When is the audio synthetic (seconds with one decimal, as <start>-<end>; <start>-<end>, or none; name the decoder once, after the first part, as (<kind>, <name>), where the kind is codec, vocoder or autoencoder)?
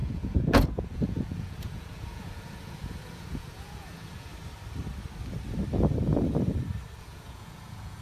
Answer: 0.0-4.3 (vocoder, Vocos); 7.0-8.0